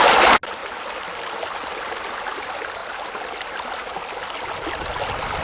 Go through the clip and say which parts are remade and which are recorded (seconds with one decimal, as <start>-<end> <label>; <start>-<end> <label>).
0.0-5.4 recorded